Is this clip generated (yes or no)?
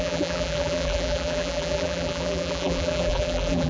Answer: yes